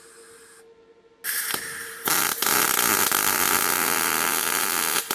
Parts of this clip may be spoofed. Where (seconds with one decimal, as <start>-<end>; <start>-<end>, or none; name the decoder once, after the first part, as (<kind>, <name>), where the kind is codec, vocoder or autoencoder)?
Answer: 1.8-3.0 (vocoder, BigVGAN v2)